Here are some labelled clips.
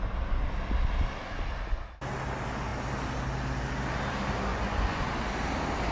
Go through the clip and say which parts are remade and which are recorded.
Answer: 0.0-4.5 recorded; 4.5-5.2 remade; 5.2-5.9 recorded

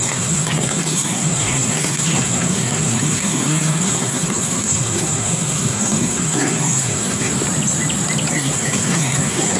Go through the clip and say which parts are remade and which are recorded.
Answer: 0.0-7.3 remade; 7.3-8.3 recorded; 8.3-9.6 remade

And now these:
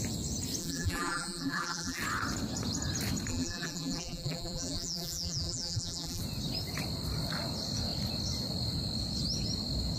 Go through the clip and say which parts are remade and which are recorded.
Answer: 0.0-0.6 recorded; 0.6-2.0 remade; 2.0-3.3 recorded; 3.3-6.2 remade; 6.2-10.0 recorded

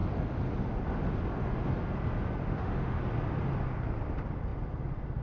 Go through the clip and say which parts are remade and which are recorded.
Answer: 0.0-2.4 recorded; 2.4-3.0 remade; 3.0-5.2 recorded

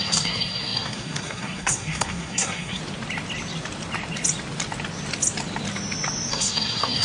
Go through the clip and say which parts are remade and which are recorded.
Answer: 0.0-2.8 remade; 2.8-6.3 recorded; 6.3-7.0 remade

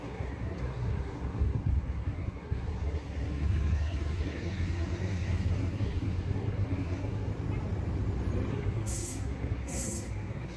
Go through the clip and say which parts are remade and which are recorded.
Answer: 0.0-7.3 remade; 7.3-8.5 recorded; 8.5-10.6 remade